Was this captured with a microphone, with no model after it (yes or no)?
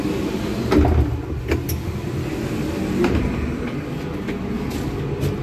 yes